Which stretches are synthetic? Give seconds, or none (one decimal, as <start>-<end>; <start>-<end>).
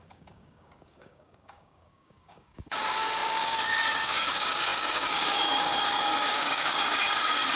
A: 0.0-7.6